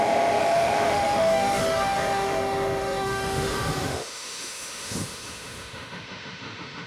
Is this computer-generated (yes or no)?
yes